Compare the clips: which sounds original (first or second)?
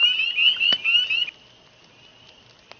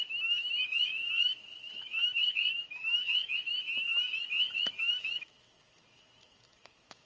first